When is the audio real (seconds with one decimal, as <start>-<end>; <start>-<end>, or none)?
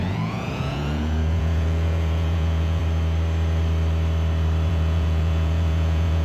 2.8-4.7